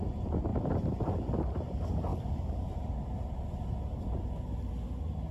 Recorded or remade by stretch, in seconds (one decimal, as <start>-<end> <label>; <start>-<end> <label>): 0.0-0.5 recorded; 0.5-1.0 remade; 1.0-2.1 recorded; 2.1-3.4 remade; 3.4-5.3 recorded